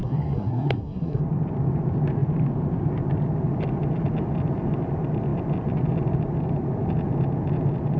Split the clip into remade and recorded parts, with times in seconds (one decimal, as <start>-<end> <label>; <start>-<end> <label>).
0.0-1.2 remade; 1.2-8.0 recorded